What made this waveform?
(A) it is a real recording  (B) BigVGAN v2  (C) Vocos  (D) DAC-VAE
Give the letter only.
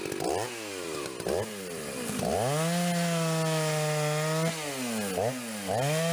A